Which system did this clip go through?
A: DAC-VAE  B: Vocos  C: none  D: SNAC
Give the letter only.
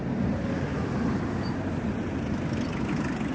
C